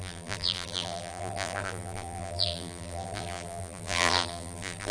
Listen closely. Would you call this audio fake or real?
fake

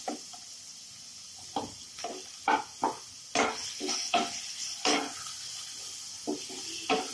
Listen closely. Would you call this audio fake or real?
real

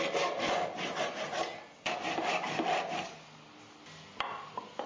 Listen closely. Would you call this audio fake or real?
real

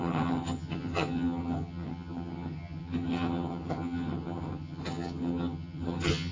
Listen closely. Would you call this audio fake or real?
fake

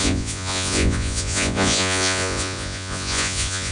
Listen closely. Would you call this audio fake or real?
fake